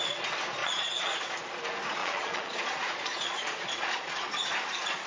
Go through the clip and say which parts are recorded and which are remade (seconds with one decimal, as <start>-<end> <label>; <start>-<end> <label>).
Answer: 0.0-0.6 recorded; 0.6-1.4 remade; 1.4-2.0 recorded; 2.0-4.2 remade; 4.2-5.1 recorded